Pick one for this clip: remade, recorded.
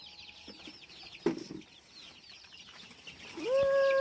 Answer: recorded